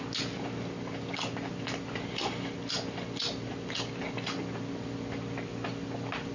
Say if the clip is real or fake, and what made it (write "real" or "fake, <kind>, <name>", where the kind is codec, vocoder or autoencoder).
real